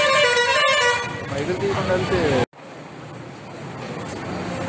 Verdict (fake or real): real